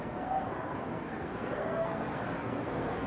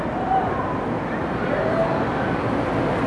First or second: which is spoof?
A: first